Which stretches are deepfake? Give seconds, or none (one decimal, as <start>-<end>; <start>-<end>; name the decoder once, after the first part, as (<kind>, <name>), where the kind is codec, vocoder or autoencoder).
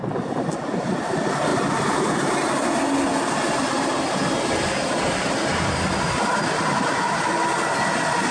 none